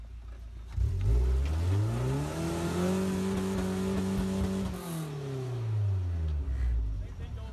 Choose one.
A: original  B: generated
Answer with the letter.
A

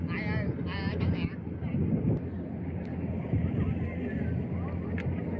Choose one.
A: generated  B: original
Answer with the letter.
B